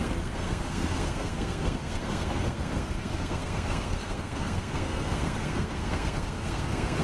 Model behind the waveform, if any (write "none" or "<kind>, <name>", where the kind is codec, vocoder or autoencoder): codec, SNAC